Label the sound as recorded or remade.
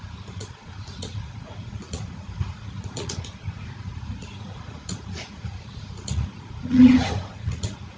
remade